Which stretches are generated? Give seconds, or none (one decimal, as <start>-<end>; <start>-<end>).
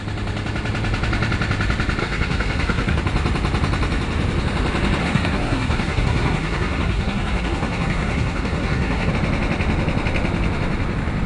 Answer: 2.0-3.0; 5.0-9.1